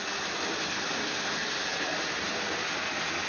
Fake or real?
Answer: real